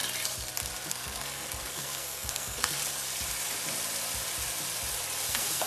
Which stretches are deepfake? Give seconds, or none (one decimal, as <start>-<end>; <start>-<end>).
0.9-2.8; 5.3-5.7